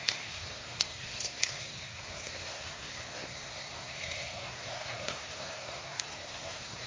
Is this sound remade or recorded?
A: remade